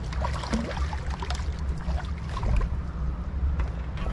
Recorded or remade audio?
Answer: recorded